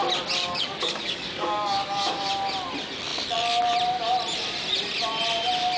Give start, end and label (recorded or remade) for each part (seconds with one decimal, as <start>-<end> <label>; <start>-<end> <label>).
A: 0.0-0.4 recorded; 0.4-2.3 remade; 2.3-5.8 recorded